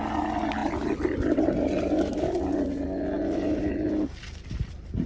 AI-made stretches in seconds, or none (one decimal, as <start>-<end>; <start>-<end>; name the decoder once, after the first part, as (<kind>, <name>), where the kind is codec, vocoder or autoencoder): none